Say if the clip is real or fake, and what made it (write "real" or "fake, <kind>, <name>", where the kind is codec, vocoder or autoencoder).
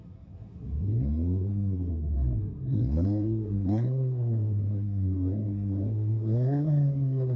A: fake, codec, SNAC